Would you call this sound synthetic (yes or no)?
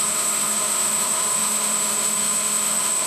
yes